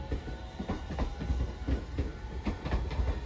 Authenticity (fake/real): real